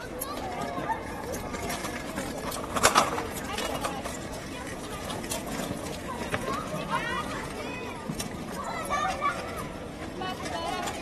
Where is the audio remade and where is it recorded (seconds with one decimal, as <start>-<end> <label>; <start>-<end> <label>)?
0.0-1.8 remade; 1.8-2.5 recorded; 2.5-10.0 remade; 10.0-11.0 recorded